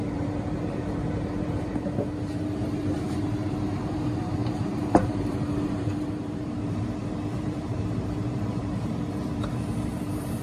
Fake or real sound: fake